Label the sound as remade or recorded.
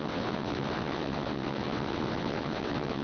remade